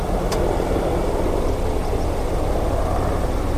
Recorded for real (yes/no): yes